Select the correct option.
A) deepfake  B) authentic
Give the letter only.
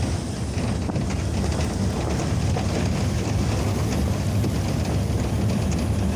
B